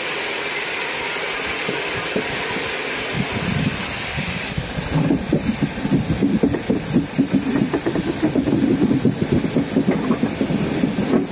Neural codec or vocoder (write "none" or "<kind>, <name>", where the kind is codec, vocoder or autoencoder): none